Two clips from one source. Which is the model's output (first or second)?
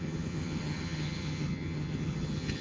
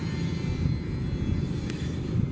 first